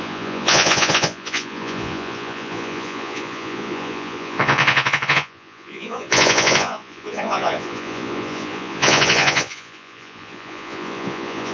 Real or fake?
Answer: fake